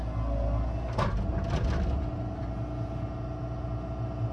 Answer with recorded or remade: recorded